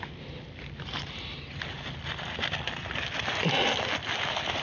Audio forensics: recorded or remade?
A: recorded